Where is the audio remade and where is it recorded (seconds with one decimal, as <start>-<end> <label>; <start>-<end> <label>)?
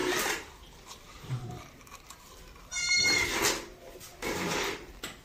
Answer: 0.0-2.0 remade; 2.0-2.7 recorded; 2.7-3.4 remade; 3.4-5.2 recorded